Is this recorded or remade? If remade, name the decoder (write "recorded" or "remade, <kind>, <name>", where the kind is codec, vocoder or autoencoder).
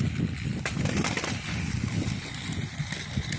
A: recorded